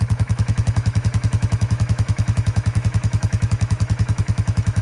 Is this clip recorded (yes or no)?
no